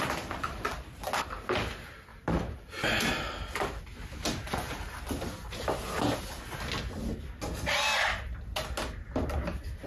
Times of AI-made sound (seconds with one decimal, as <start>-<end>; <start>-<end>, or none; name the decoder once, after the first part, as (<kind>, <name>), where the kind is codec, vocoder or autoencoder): 2.1-3.0 (vocoder, BigVGAN v2)